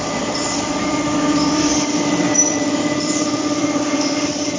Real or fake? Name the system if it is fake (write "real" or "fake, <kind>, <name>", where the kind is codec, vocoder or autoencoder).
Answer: fake, vocoder, BigVGAN v2